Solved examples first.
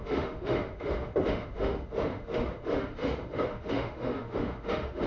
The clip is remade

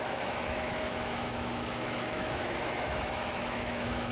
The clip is remade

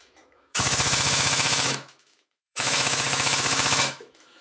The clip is remade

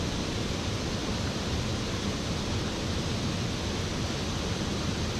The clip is recorded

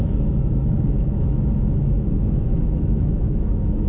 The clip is remade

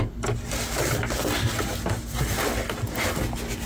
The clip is recorded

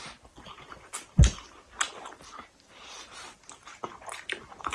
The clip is recorded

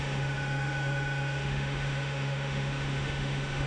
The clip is remade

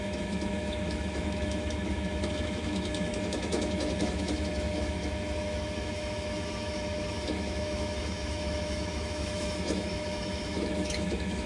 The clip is remade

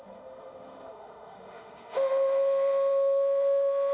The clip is remade